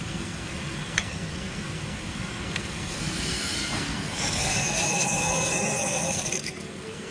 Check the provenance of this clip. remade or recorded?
remade